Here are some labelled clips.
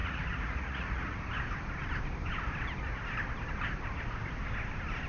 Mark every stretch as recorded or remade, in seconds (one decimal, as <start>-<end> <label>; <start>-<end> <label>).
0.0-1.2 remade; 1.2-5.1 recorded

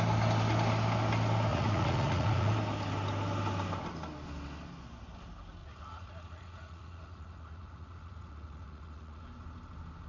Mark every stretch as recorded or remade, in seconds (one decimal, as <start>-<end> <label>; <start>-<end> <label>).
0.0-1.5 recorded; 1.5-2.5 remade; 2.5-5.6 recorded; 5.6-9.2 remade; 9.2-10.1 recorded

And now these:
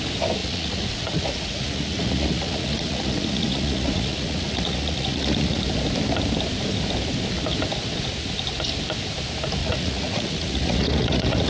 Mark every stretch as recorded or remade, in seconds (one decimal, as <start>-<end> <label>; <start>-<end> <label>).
0.0-0.4 recorded; 0.4-5.6 remade; 5.6-9.6 recorded; 9.6-11.5 remade

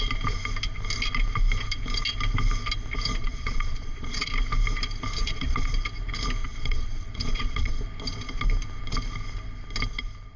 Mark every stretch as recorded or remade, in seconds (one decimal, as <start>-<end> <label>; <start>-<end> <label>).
0.0-3.2 recorded; 3.2-4.3 remade; 4.3-5.2 recorded; 5.2-5.7 remade; 5.7-6.4 recorded; 6.4-7.8 remade; 7.8-10.4 recorded

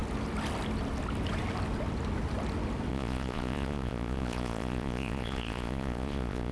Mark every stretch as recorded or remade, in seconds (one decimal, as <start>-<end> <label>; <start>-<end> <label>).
0.0-2.9 recorded; 2.9-6.5 remade